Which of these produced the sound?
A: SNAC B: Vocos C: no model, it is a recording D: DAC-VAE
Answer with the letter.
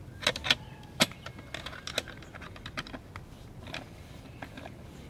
C